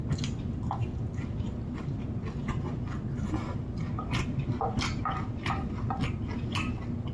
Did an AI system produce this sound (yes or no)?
no